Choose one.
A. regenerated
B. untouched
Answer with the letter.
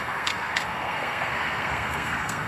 A